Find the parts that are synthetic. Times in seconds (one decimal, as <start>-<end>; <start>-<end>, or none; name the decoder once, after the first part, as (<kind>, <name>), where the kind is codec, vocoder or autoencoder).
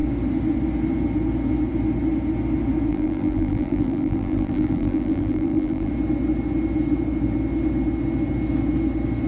2.9-5.9 (vocoder, BigVGAN v2)